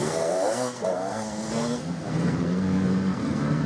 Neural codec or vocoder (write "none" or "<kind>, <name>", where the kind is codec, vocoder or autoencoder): codec, SNAC